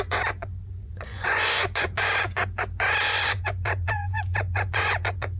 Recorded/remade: remade